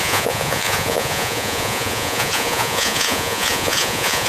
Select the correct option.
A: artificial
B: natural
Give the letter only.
A